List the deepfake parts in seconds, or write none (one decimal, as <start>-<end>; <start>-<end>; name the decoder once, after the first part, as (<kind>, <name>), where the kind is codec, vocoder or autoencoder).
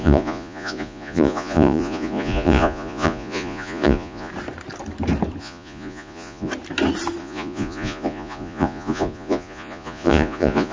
0.0-4.3 (vocoder, Vocos); 5.4-6.5; 7.2-10.7